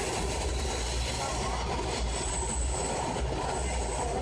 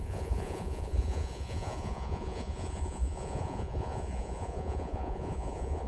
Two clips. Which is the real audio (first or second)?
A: first